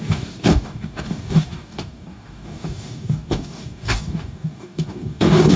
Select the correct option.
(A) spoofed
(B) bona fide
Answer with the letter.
A